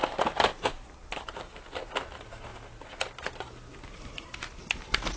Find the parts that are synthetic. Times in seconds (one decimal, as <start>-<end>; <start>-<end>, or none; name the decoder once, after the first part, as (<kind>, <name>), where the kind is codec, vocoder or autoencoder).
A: none